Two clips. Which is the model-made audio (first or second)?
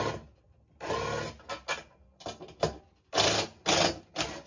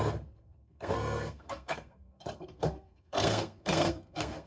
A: second